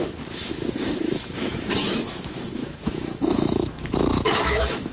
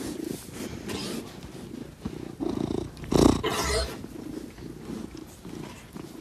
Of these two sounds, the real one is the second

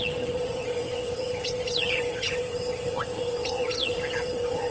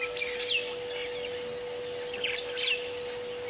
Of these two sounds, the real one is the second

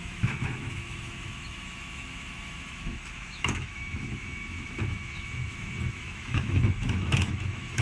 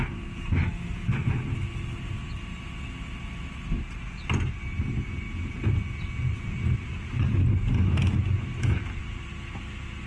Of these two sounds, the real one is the second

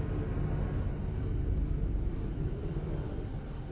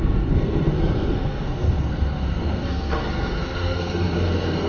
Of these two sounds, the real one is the first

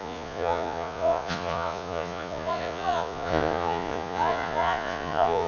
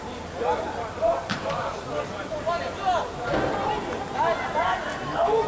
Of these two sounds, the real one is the second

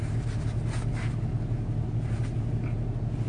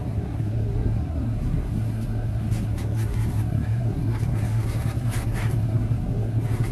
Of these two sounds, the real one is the first